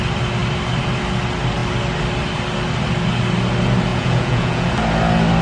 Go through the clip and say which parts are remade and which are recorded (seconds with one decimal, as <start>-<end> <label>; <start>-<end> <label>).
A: 0.0-3.9 recorded; 3.9-4.7 remade; 4.7-5.4 recorded

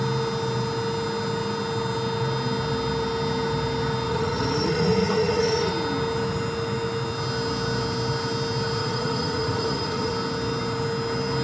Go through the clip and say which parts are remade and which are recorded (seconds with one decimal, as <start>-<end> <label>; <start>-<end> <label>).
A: 0.0-4.1 recorded; 4.1-5.7 remade; 5.7-8.8 recorded; 8.8-10.1 remade; 10.1-11.4 recorded

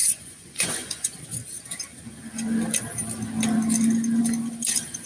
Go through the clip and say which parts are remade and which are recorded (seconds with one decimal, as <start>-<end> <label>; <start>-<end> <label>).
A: 0.0-1.2 remade; 1.2-5.1 recorded

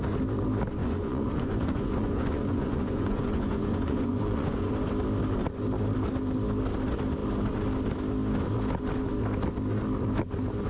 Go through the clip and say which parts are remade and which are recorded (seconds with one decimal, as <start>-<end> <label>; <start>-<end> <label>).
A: 0.0-0.8 recorded; 0.8-4.7 remade; 4.7-10.7 recorded

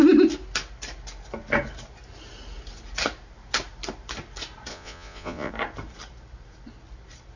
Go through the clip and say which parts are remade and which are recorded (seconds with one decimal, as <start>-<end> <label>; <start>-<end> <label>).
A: 0.0-4.7 recorded; 4.7-5.5 remade; 5.5-7.4 recorded